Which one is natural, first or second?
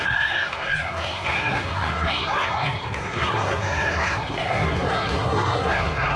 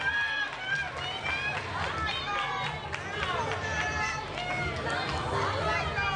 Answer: second